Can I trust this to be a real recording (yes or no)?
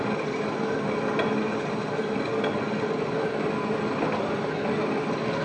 yes